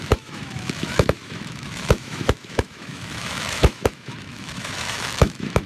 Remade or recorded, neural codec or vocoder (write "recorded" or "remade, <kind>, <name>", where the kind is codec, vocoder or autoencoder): remade, autoencoder, DAC-VAE